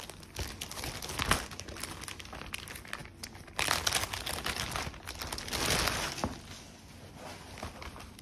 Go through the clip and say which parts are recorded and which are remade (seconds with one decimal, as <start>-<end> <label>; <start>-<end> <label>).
0.0-8.2 recorded